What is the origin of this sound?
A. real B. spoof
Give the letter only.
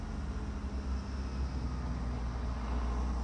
A